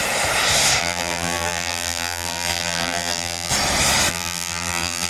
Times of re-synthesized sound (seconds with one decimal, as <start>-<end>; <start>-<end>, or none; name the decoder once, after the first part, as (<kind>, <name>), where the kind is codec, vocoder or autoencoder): 0.8-3.5 (vocoder, BigVGAN v2); 4.1-5.1